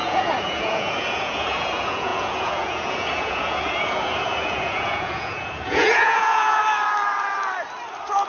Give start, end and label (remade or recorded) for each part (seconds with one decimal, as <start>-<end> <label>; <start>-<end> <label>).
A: 0.0-6.6 remade; 6.6-8.3 recorded